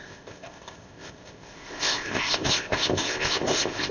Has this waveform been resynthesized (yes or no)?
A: yes